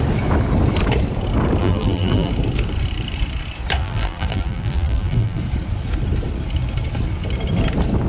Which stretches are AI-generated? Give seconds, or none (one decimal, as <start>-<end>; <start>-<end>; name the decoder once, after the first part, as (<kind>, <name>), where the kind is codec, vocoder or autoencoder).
1.6-2.3 (vocoder, BigVGAN v2); 3.8-5.4